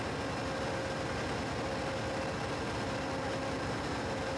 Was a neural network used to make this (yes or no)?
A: no